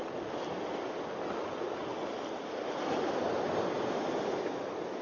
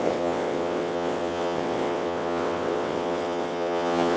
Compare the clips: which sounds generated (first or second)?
second